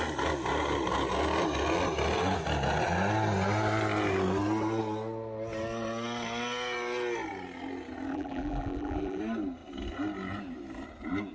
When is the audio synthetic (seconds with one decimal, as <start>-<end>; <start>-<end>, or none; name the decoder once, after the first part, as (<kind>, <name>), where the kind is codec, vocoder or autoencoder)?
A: 8.1-9.2 (vocoder, BigVGAN v2)